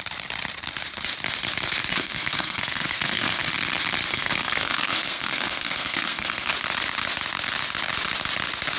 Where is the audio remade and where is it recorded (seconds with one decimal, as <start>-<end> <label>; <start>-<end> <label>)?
0.0-1.9 recorded; 1.9-3.5 remade; 3.5-4.1 recorded; 4.1-6.5 remade; 6.5-8.8 recorded